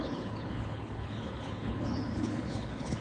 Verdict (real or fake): fake